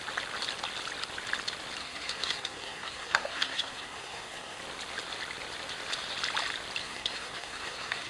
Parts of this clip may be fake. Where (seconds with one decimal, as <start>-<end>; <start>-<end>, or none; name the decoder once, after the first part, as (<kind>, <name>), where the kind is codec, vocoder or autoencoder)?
1.8-4.6 (codec, SNAC); 6.8-8.1